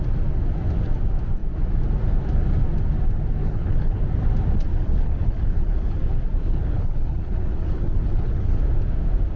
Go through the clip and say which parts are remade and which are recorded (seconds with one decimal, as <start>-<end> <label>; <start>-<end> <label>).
0.0-3.4 recorded; 3.4-4.0 remade; 4.0-4.7 recorded; 4.7-6.0 remade; 6.0-6.4 recorded; 6.4-8.6 remade; 8.6-9.4 recorded

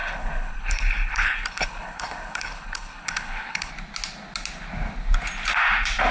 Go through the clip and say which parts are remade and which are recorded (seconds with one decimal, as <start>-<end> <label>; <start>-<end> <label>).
0.0-3.7 remade; 3.7-6.1 recorded

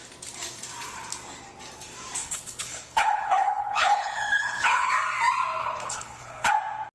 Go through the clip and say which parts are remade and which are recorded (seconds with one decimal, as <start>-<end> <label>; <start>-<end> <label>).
0.0-2.2 recorded; 2.2-4.9 remade; 4.9-5.6 recorded; 5.6-6.5 remade; 6.5-6.9 recorded

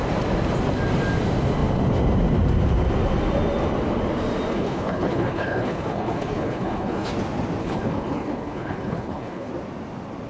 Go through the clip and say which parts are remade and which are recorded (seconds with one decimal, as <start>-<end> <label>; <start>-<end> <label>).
0.0-4.5 recorded; 4.5-7.1 remade; 7.1-7.6 recorded; 7.6-9.5 remade; 9.5-10.3 recorded

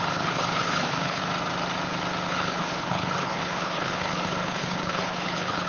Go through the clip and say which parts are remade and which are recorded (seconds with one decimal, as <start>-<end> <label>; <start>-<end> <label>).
0.0-1.2 remade; 1.2-2.3 recorded; 2.3-5.7 remade